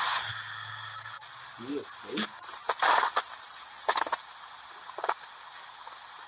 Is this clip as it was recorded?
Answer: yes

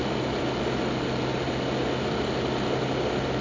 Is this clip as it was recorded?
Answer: yes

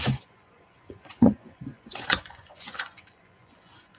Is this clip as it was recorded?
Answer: no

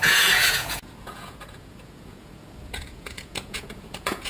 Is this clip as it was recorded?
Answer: no